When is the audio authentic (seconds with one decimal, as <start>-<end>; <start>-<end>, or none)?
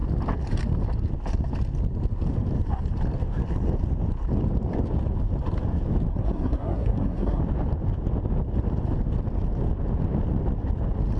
0.0-6.1; 7.4-11.2